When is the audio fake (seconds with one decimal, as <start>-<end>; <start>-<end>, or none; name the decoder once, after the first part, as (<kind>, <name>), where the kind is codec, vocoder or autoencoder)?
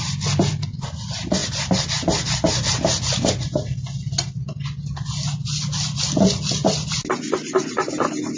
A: none